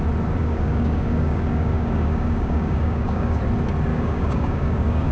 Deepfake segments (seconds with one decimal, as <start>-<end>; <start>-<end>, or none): 0.4-3.4; 3.9-5.1